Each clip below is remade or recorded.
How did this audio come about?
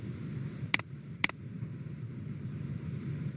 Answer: recorded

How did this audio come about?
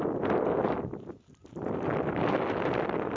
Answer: recorded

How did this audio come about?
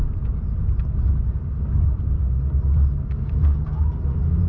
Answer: recorded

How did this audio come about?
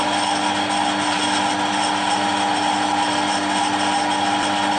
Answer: recorded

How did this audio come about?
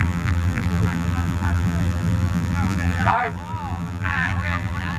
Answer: remade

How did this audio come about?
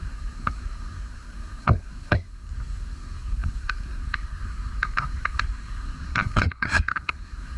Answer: remade